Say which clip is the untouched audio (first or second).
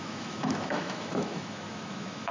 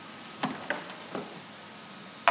second